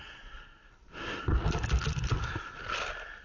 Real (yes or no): yes